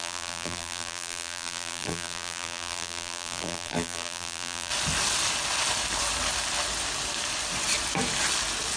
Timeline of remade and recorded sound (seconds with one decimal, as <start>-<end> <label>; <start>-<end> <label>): 0.0-4.7 remade; 4.7-8.8 recorded

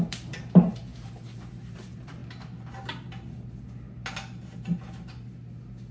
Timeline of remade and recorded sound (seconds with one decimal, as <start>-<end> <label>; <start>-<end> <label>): 0.0-2.2 remade; 2.2-5.9 recorded

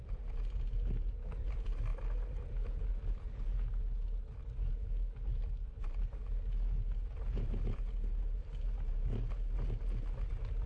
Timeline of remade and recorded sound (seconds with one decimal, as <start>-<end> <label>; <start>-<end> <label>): 0.0-10.7 recorded

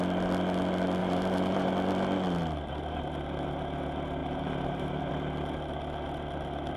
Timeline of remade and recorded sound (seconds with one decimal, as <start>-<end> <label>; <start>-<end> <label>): 0.0-1.0 recorded; 1.0-1.7 remade; 1.7-4.2 recorded; 4.2-5.1 remade; 5.1-6.8 recorded

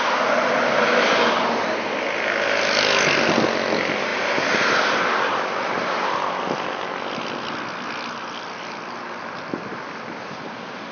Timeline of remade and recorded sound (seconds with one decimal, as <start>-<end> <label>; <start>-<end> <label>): 0.0-9.7 recorded; 9.7-10.9 remade

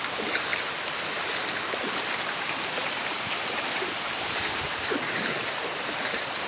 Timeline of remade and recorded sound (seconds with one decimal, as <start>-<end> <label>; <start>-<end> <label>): 0.0-0.5 remade; 0.5-1.1 recorded; 1.1-6.5 remade

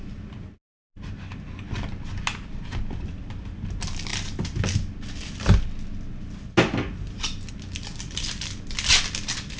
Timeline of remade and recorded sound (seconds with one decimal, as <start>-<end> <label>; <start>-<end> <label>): 0.0-9.6 recorded

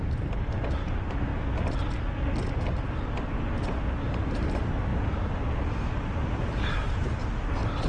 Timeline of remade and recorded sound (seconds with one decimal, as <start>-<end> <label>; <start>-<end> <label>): 0.0-1.3 remade; 1.3-4.1 recorded; 4.1-4.9 remade; 4.9-6.0 recorded; 6.0-7.9 remade